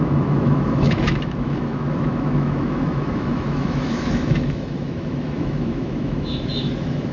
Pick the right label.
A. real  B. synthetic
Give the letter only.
B